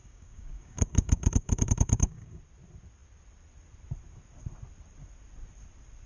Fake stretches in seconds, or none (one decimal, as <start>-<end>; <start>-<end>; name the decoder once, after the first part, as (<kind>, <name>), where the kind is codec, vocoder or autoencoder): 0.0-2.4 (codec, DAC)